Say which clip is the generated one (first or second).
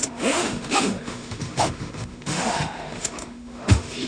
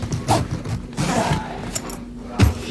first